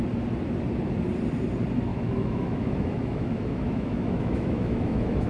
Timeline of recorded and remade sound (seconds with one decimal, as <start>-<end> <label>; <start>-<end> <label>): 0.0-1.9 recorded; 1.9-5.3 remade